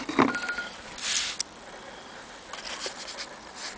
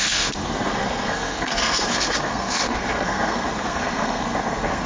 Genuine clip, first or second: first